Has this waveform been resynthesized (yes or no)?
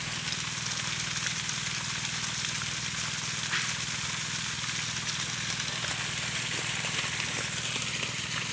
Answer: no